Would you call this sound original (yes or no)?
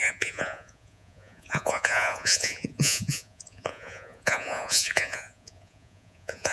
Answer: no